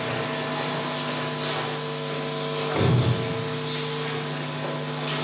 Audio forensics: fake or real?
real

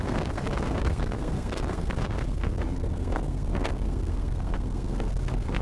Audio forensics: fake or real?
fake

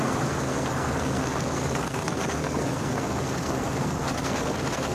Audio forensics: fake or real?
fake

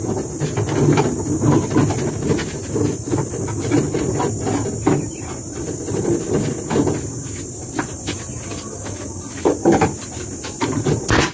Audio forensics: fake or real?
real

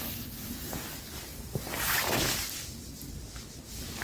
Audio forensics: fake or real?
real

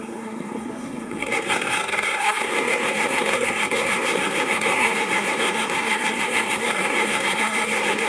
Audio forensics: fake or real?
fake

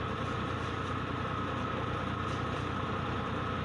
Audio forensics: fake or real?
real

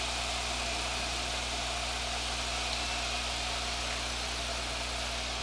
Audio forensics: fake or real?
real